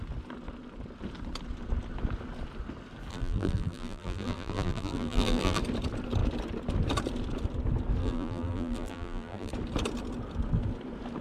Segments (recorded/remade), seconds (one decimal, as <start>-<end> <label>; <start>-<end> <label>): 0.0-3.1 recorded; 3.1-5.6 remade; 5.6-8.0 recorded; 8.0-9.5 remade; 9.5-11.2 recorded